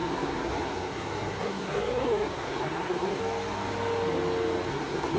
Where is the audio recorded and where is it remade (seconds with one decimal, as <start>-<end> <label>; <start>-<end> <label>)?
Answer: 0.0-3.2 remade; 3.2-4.7 recorded; 4.7-5.2 remade